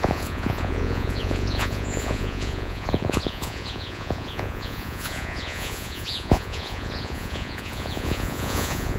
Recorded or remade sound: remade